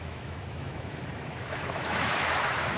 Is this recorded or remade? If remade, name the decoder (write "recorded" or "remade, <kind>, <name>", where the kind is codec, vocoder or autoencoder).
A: remade, autoencoder, DAC-VAE